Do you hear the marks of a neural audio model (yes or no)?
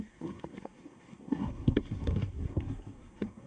yes